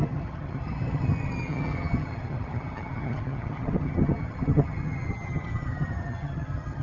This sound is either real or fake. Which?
fake